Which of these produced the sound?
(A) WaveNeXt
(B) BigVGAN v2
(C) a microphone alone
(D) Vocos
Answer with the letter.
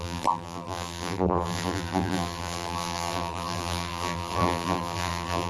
B